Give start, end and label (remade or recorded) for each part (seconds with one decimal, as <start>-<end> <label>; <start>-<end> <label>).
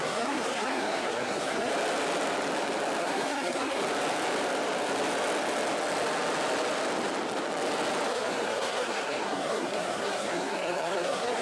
0.0-1.7 remade; 1.7-3.0 recorded; 3.0-3.8 remade; 3.8-8.1 recorded; 8.1-11.4 remade